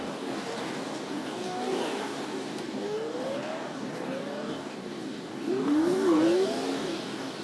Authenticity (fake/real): fake